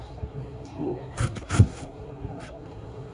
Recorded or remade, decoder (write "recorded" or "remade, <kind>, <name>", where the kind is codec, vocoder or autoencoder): remade, codec, SNAC